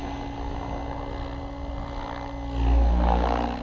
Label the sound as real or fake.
real